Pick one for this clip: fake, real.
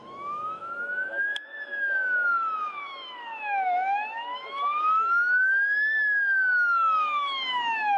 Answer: fake